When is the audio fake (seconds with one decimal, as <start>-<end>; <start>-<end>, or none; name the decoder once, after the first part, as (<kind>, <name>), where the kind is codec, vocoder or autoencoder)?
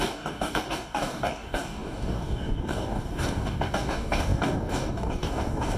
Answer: 0.0-5.8 (codec, DAC)